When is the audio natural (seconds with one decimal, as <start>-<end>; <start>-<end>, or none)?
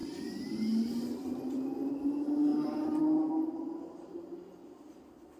0.0-5.4